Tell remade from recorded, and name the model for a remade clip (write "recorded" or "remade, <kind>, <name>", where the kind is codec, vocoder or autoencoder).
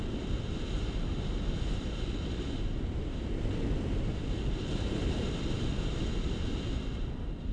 recorded